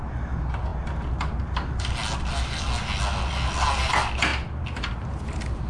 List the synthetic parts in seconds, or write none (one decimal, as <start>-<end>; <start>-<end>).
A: none